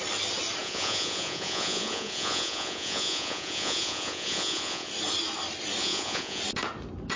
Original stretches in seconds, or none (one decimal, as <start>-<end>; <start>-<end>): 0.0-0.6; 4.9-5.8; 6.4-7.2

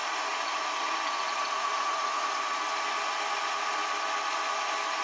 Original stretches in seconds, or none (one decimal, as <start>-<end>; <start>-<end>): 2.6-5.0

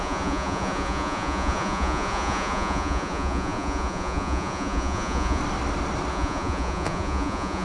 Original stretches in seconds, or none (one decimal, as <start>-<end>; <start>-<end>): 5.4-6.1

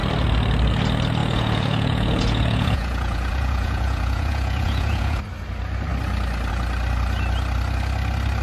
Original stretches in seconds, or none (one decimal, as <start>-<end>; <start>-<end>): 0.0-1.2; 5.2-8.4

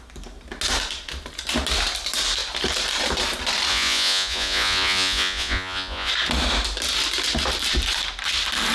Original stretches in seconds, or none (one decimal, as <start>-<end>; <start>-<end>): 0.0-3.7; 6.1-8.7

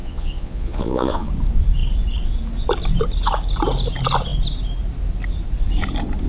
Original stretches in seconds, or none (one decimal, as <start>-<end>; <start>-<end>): 1.3-6.3